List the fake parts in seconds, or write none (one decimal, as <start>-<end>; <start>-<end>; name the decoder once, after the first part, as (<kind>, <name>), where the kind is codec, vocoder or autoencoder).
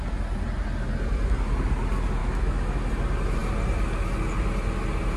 2.2-2.8 (autoencoder, DAC-VAE)